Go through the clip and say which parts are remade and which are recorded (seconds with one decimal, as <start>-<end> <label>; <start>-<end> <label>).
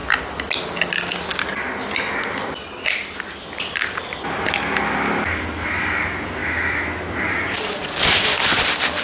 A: 0.0-6.4 recorded; 6.4-7.1 remade; 7.1-9.0 recorded